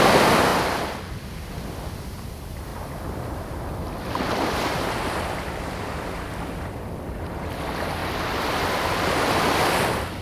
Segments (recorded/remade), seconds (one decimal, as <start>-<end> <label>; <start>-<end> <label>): 0.0-0.5 remade; 0.5-1.1 recorded; 1.1-10.2 remade